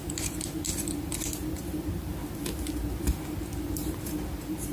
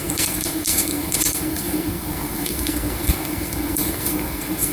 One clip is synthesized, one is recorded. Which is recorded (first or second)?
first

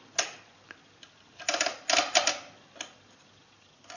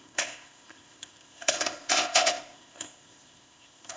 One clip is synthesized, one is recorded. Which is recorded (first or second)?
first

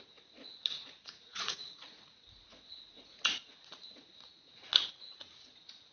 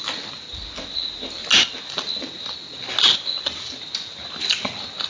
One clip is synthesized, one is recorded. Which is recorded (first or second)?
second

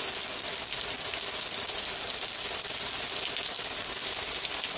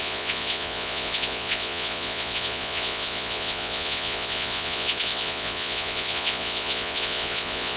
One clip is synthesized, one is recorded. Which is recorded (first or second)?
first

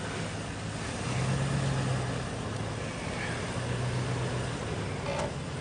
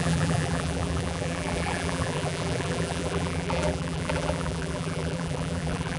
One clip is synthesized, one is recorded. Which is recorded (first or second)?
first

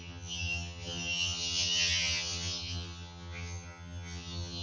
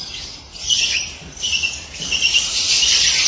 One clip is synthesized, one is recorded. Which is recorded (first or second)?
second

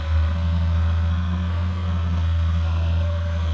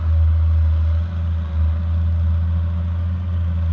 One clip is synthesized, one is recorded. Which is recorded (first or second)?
second